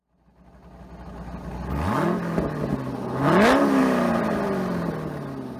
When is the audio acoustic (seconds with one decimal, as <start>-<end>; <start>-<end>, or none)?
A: 0.0-3.8; 4.3-5.6